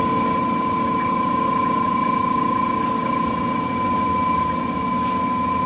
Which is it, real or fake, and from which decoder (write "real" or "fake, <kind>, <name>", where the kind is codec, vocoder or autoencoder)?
real